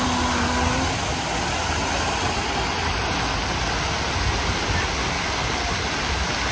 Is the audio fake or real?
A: real